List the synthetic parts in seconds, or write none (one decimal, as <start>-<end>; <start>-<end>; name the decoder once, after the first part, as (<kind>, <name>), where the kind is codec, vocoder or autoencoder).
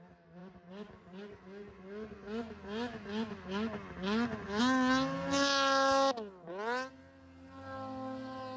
none